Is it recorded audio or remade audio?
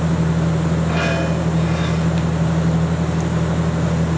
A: recorded